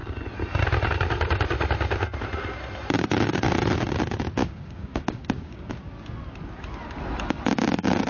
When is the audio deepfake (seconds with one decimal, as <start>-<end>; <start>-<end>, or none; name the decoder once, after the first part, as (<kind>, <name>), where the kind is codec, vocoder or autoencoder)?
4.4-5.7 (codec, DAC)